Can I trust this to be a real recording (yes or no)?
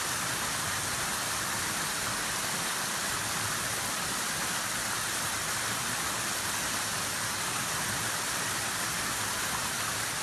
yes